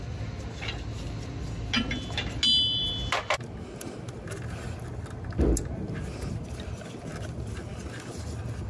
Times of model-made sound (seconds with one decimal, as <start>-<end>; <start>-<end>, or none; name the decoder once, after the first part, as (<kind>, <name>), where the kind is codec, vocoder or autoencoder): none